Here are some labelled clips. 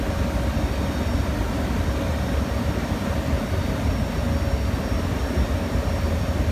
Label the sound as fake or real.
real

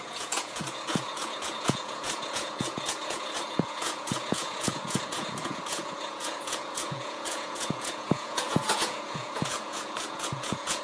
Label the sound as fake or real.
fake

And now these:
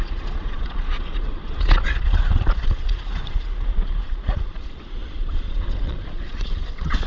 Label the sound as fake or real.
fake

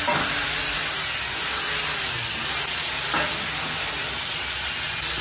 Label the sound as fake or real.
real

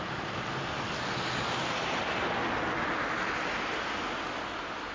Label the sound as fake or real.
real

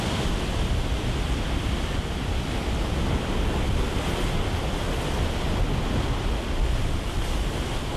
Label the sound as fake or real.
real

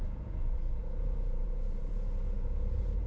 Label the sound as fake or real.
fake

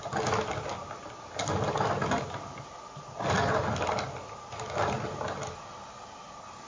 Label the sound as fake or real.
real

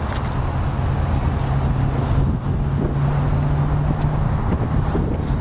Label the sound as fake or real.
real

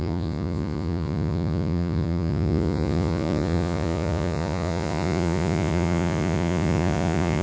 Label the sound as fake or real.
fake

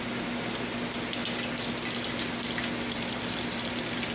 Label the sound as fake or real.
real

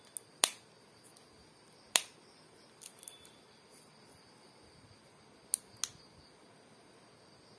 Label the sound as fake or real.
real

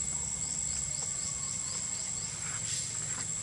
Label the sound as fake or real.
real